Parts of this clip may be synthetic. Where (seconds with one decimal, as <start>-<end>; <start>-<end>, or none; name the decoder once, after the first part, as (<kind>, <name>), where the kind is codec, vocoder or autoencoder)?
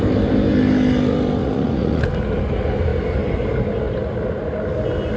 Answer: 1.4-2.0 (vocoder, Vocos)